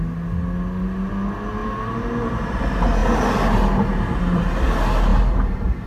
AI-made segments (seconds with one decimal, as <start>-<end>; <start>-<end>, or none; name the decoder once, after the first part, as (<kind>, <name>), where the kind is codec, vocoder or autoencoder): 1.6-2.6 (vocoder, BigVGAN v2); 5.1-5.9